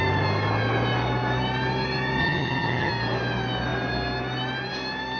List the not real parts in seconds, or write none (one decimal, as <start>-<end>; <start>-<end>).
2.2-2.9